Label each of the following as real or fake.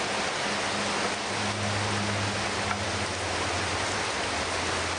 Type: real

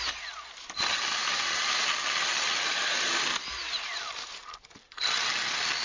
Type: real